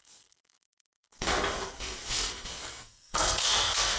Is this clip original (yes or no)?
no